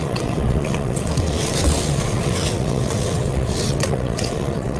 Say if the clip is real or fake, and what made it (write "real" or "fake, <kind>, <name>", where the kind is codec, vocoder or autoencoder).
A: fake, vocoder, WaveNeXt